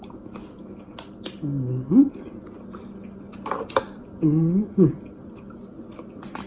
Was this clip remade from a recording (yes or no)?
no